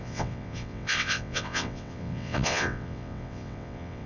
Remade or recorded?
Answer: remade